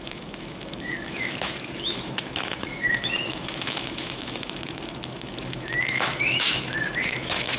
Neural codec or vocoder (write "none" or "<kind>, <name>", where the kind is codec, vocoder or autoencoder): autoencoder, DAC-VAE